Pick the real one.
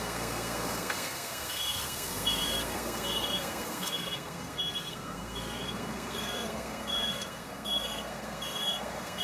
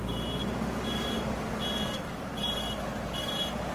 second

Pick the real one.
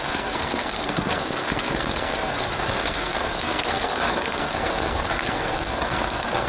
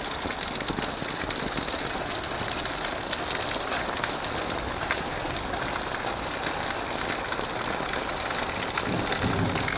second